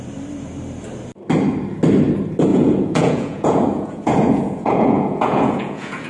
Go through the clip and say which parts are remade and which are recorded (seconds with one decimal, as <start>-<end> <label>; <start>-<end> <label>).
0.0-2.5 recorded; 2.5-6.1 remade